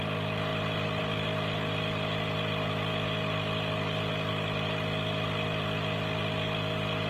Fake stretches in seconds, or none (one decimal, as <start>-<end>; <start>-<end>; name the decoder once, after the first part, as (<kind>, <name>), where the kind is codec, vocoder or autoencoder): 0.5-1.0 (vocoder, BigVGAN v2)